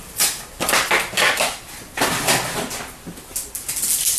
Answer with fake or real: real